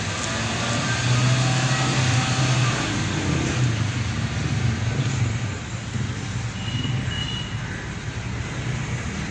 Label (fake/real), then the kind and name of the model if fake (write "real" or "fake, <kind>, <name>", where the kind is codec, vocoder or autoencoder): real